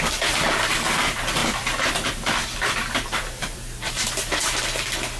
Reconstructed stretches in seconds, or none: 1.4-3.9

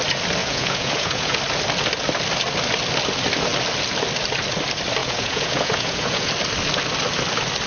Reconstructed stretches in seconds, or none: 0.4-1.4; 5.0-6.3

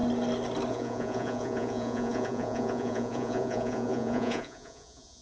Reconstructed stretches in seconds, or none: 0.7-5.2

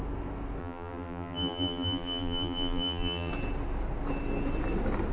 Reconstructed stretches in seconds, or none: 0.6-3.3

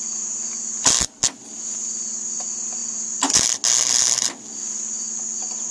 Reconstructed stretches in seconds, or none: none